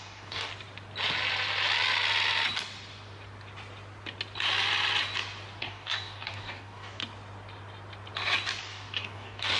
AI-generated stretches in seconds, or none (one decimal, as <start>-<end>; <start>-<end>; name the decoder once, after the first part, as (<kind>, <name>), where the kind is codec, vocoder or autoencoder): 0.0-0.5 (codec, DAC); 5.6-7.0; 8.6-9.6